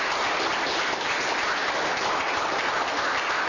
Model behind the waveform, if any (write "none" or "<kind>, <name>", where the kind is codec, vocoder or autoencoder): none